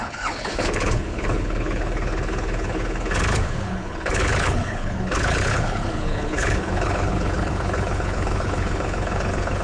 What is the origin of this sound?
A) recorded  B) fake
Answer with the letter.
B